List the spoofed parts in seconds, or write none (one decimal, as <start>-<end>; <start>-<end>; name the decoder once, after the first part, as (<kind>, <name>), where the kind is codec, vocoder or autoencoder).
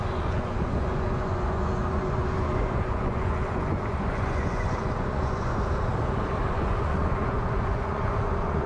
0.0-5.5 (vocoder, Vocos); 6.5-8.7